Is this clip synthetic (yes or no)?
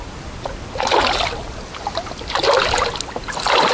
no